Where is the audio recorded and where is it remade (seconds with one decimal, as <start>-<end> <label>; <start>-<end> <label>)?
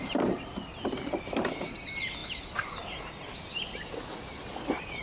0.0-5.0 recorded